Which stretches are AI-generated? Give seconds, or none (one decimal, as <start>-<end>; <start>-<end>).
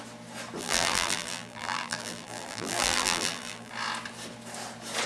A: 0.6-3.7